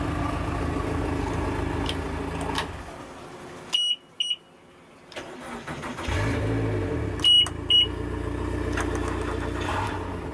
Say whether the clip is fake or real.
real